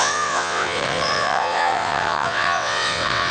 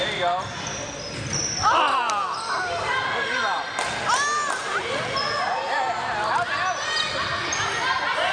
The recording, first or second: second